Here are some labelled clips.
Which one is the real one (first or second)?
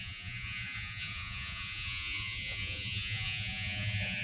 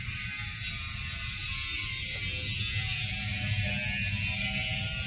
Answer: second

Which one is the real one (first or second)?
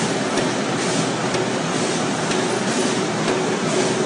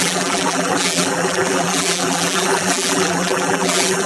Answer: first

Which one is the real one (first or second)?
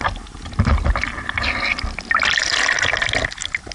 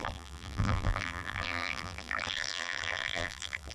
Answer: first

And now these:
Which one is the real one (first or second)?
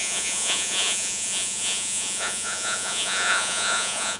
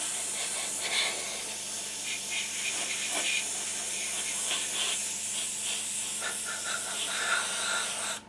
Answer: second